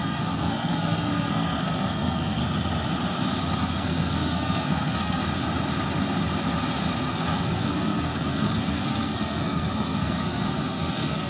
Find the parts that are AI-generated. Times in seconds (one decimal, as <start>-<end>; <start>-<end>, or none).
0.0-2.4; 3.4-5.2; 7.1-11.3